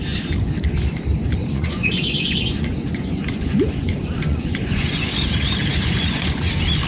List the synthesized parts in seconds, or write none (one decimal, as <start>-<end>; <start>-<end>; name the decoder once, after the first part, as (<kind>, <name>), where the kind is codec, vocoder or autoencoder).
1.4-5.0 (vocoder, Vocos); 5.7-6.5